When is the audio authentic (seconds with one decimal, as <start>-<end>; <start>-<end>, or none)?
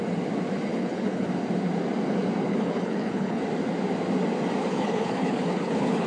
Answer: 0.0-0.7; 1.3-2.5; 3.4-4.6